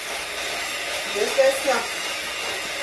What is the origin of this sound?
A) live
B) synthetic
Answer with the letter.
A